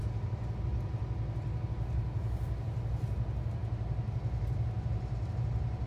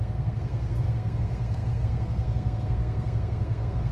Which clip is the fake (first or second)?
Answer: second